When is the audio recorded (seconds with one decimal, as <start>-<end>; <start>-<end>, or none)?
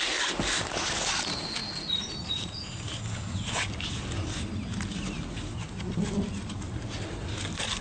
0.0-7.8